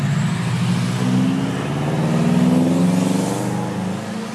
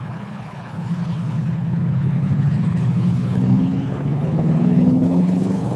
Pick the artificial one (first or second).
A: second